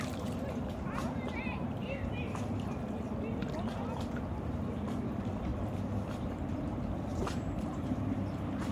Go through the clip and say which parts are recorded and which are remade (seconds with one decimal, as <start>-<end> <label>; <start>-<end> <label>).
0.0-1.8 remade; 1.8-4.4 recorded; 4.4-5.5 remade; 5.5-6.2 recorded; 6.2-8.7 remade